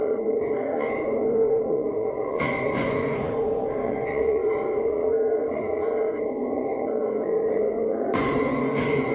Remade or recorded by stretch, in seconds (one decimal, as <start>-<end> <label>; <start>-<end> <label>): 0.0-9.1 remade